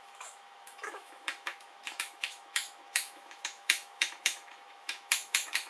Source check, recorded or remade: remade